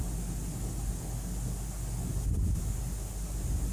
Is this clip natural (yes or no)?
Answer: yes